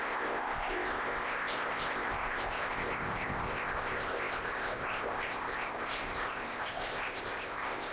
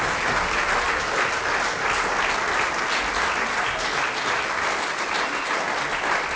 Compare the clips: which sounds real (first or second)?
second